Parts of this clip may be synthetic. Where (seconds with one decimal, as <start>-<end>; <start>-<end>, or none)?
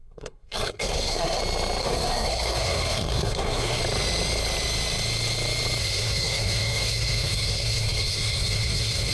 0.0-1.4; 1.8-3.8; 5.8-9.1